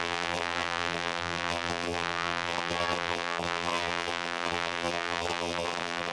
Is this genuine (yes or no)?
no